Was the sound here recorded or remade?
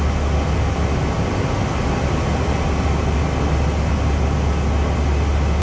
recorded